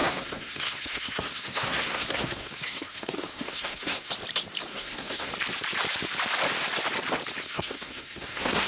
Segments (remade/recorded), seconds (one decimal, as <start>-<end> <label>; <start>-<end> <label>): 0.0-4.1 remade; 4.1-4.7 recorded; 4.7-5.3 remade; 5.3-7.4 recorded; 7.4-8.7 remade